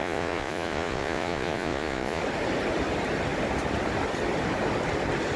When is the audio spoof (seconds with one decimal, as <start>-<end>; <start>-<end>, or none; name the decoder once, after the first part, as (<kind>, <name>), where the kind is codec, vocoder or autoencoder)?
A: 0.0-2.2 (vocoder, Vocos)